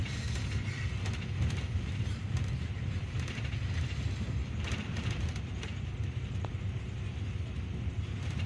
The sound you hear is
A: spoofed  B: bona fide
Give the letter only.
A